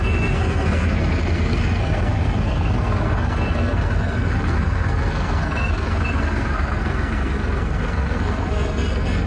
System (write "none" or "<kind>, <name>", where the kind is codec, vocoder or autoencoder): codec, SNAC